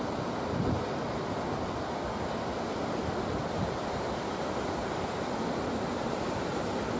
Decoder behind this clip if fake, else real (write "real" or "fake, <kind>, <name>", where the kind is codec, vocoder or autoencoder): real